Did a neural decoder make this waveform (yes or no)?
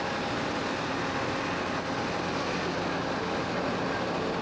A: no